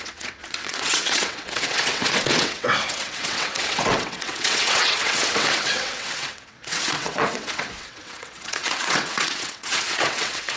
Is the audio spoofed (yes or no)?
yes